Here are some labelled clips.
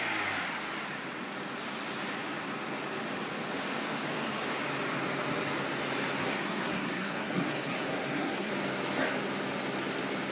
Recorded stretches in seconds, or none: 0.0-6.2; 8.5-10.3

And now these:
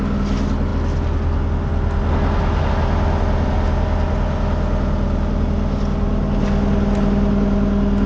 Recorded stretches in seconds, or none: 0.0-8.1